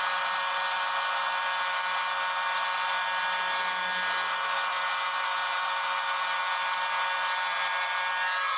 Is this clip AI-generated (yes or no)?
no